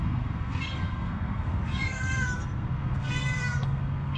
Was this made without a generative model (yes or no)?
no